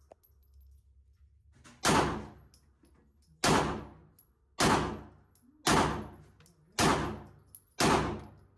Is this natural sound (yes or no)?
yes